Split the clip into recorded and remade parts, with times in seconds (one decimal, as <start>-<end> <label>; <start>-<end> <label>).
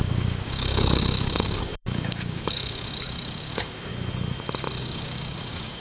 0.0-3.9 remade; 3.9-4.8 recorded; 4.8-5.8 remade